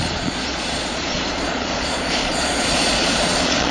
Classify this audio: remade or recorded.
remade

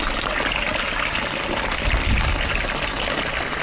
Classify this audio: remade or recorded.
recorded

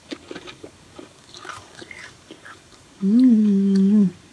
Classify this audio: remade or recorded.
remade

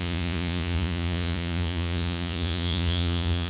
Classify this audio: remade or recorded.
remade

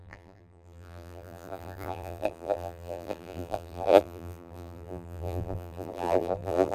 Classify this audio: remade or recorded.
remade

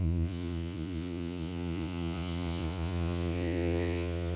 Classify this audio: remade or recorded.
remade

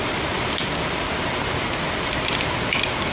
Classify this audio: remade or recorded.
remade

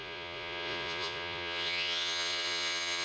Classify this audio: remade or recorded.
remade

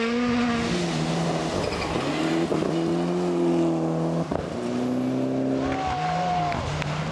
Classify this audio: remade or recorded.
recorded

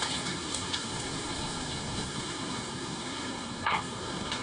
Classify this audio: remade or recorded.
remade